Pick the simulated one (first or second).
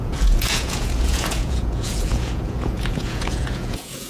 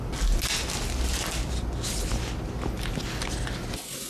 first